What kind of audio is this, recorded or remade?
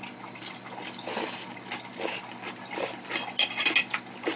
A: recorded